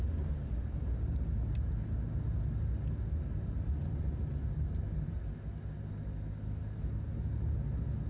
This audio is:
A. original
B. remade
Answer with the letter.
A